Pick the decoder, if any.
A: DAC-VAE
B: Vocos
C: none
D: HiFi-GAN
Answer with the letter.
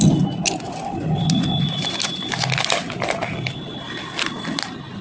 C